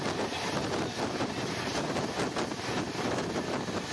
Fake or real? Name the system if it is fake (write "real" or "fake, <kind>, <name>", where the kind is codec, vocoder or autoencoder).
real